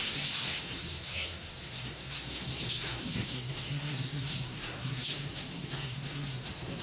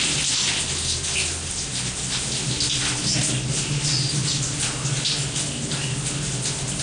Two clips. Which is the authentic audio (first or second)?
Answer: second